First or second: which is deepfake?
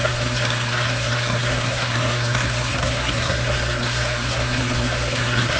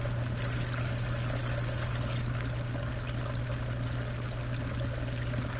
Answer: first